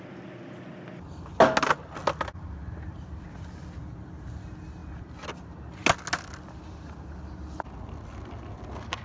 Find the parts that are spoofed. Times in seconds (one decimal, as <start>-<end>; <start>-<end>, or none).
none